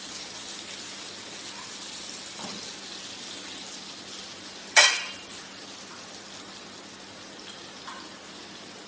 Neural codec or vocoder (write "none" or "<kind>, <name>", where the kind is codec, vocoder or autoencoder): none